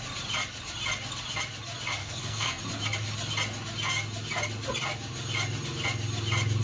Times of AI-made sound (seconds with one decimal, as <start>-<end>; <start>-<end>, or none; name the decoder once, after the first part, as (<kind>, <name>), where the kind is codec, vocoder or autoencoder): 2.0-2.6 (codec, SNAC)